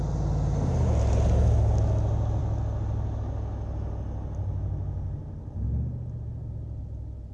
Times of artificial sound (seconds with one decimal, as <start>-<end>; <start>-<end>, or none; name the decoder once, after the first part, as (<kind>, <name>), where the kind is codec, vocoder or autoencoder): none